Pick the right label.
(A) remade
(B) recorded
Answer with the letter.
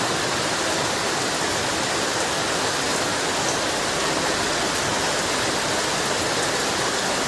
B